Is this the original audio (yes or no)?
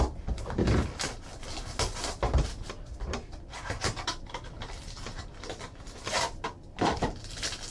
no